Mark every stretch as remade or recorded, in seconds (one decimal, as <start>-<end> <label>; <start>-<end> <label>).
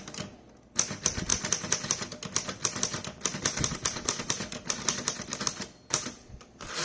0.0-6.8 recorded